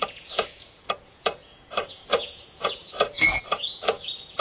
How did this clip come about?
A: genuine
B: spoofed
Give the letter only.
B